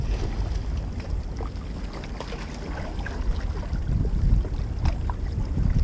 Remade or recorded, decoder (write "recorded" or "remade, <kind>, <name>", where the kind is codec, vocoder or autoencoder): recorded